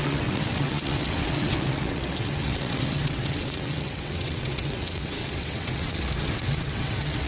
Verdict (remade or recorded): remade